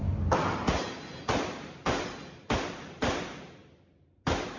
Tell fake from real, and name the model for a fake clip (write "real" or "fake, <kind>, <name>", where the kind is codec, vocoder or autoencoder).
real